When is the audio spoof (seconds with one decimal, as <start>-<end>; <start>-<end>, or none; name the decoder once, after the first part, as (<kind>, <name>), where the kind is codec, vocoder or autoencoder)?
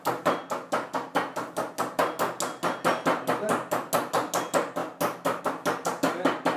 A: none